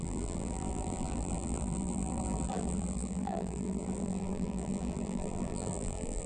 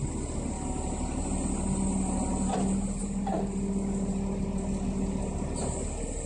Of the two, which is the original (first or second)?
second